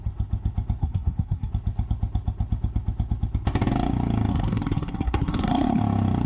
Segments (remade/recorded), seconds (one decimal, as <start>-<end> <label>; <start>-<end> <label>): 0.0-0.8 recorded; 0.8-1.5 remade; 1.5-4.3 recorded; 4.3-5.8 remade; 5.8-6.3 recorded